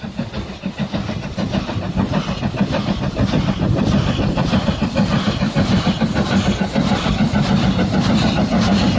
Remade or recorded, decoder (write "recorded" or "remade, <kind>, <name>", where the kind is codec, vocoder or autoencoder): recorded